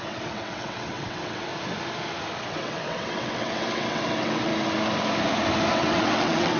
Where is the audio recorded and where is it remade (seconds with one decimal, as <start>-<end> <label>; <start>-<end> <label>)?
0.0-1.5 remade; 1.5-2.5 recorded; 2.5-4.5 remade; 4.5-5.7 recorded; 5.7-6.6 remade